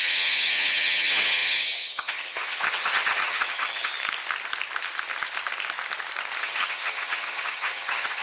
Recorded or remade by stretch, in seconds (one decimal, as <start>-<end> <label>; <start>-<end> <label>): 0.0-3.9 remade; 3.9-6.4 recorded; 6.4-8.2 remade

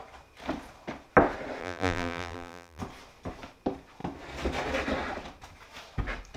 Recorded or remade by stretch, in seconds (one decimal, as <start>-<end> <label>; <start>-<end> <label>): 0.0-1.6 recorded; 1.6-2.8 remade; 2.8-6.4 recorded

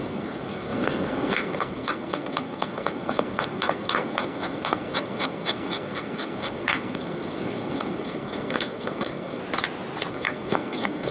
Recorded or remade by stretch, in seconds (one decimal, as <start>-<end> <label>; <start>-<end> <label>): 0.0-9.4 remade; 9.4-10.1 recorded; 10.1-11.1 remade

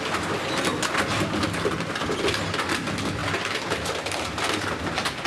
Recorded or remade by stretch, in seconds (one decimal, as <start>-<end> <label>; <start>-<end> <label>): 0.0-3.2 recorded; 3.2-3.9 remade; 3.9-5.3 recorded